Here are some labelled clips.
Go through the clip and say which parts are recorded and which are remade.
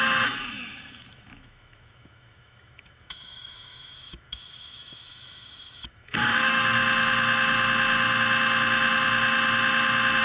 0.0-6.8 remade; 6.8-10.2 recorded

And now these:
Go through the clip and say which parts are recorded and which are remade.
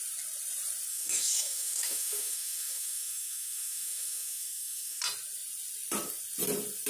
0.0-0.9 recorded; 0.9-5.0 remade; 5.0-6.9 recorded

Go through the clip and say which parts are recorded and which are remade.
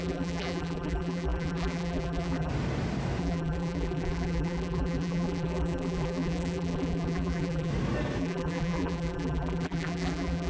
0.0-2.5 remade; 2.5-3.2 recorded; 3.2-7.7 remade; 7.7-8.2 recorded; 8.2-10.5 remade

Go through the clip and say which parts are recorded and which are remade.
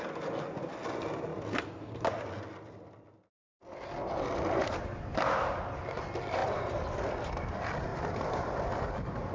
0.0-1.3 recorded; 1.3-2.1 remade; 2.1-6.4 recorded; 6.4-7.3 remade; 7.3-7.9 recorded; 7.9-8.5 remade; 8.5-9.3 recorded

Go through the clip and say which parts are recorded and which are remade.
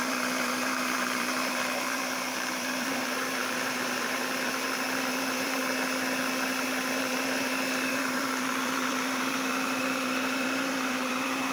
0.0-5.6 remade; 5.6-7.0 recorded; 7.0-11.5 remade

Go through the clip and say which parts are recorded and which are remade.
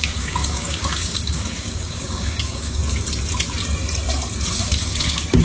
0.0-2.8 remade; 2.8-4.6 recorded; 4.6-5.4 remade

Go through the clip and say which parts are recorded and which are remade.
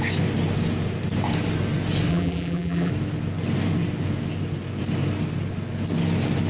0.0-2.1 recorded; 2.1-2.9 remade; 2.9-6.5 recorded